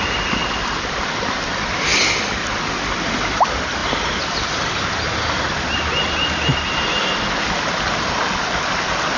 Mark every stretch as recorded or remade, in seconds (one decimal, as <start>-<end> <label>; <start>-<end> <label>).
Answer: 0.0-0.4 recorded; 0.4-1.0 remade; 1.0-9.2 recorded